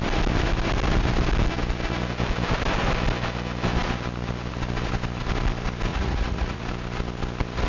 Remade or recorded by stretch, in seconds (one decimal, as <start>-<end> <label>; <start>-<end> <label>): 0.0-5.9 recorded; 5.9-6.6 remade; 6.6-7.7 recorded